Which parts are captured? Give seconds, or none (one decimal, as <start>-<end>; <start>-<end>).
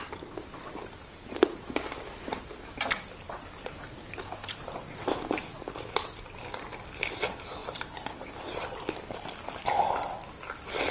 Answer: 0.0-10.9